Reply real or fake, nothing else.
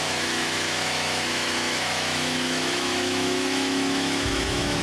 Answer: fake